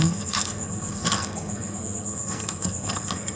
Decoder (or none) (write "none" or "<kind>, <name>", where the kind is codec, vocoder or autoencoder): codec, SNAC